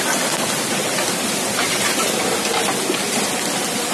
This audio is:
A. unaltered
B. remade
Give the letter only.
A